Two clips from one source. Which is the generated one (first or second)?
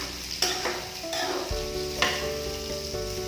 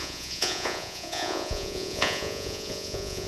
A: second